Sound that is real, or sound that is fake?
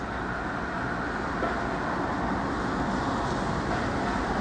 real